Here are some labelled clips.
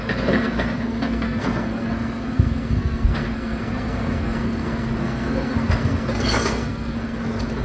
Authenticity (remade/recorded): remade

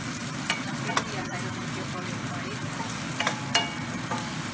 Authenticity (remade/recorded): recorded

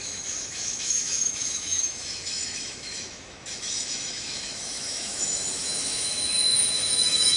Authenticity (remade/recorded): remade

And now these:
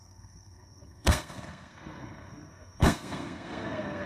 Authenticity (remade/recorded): remade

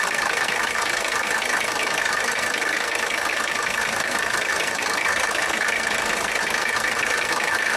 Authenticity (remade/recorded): remade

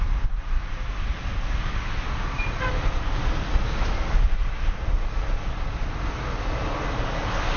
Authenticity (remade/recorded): recorded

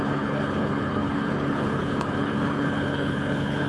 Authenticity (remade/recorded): remade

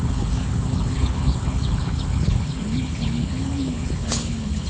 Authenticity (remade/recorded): remade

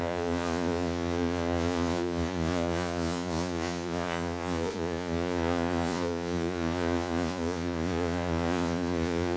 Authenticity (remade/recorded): remade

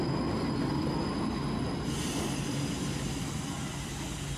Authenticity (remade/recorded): recorded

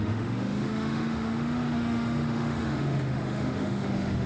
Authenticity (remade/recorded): remade